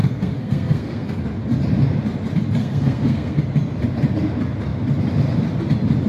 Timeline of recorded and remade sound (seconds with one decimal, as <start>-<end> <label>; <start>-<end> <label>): 0.0-1.2 remade; 1.2-2.6 recorded; 2.6-3.4 remade; 3.4-6.1 recorded